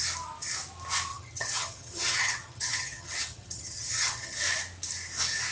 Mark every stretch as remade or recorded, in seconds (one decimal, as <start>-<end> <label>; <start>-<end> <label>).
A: 0.0-1.1 recorded; 1.1-4.4 remade; 4.4-5.5 recorded